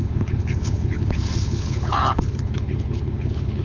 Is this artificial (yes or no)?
yes